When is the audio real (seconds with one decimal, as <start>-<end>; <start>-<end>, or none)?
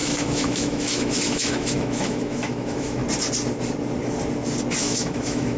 3.0-4.8